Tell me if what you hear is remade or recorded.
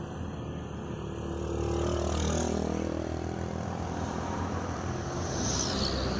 recorded